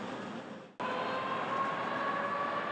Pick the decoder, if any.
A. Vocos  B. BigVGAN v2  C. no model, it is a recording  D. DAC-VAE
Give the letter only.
C